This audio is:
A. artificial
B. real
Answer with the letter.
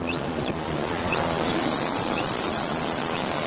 A